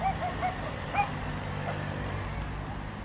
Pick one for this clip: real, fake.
real